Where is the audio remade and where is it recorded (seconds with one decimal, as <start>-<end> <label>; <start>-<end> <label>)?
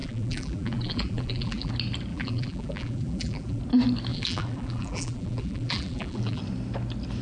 0.0-1.7 remade; 1.7-2.1 recorded; 2.1-3.6 remade; 3.6-4.1 recorded; 4.1-6.4 remade; 6.4-7.2 recorded